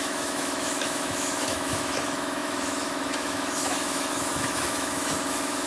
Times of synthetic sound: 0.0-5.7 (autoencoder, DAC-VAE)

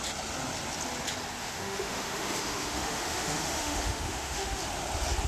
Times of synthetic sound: 1.4-4.6 (autoencoder, DAC-VAE)

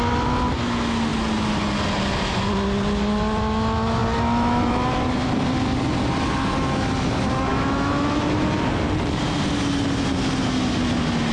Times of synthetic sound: 7.5-8.1 (autoencoder, DAC-VAE)

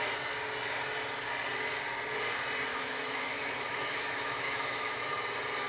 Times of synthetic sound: 2.7-5.1 (autoencoder, DAC-VAE)

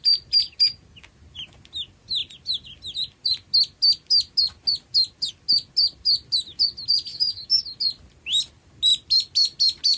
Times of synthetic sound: 7.1-7.6 (autoencoder, DAC-VAE)